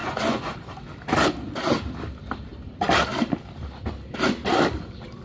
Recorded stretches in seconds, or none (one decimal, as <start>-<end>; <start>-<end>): 0.5-5.2